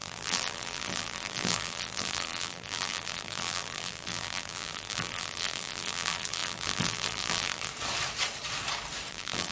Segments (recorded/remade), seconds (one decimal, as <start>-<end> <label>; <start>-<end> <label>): 0.0-7.7 remade; 7.7-9.1 recorded; 9.1-9.5 remade